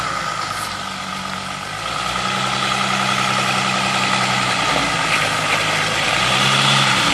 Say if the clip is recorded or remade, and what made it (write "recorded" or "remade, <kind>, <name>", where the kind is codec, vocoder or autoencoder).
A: recorded